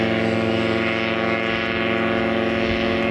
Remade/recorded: recorded